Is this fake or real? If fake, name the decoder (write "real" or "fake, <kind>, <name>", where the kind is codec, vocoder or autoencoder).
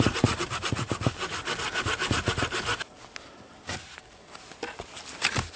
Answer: real